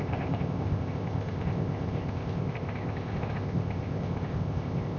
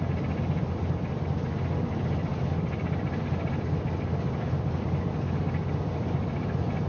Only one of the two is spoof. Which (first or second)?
first